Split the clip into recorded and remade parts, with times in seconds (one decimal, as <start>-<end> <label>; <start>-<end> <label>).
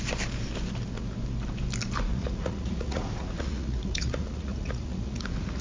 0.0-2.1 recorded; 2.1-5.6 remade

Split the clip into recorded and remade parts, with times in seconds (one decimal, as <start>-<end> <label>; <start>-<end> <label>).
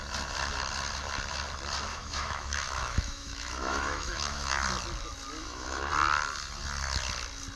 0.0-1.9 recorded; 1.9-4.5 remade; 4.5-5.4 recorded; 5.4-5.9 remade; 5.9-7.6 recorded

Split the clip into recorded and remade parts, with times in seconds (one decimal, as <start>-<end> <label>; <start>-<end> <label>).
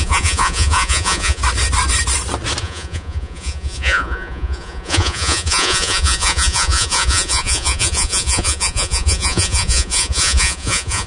0.0-1.4 remade; 1.4-2.6 recorded; 2.6-11.1 remade